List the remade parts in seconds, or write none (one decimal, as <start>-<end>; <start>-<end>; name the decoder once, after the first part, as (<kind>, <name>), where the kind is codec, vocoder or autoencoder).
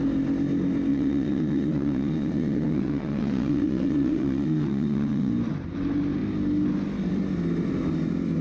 0.9-5.3 (vocoder, WaveNeXt)